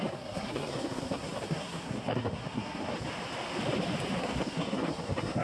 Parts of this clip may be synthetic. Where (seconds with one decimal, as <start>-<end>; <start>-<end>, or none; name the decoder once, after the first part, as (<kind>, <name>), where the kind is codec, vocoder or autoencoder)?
0.0-2.9 (codec, SNAC); 4.2-5.4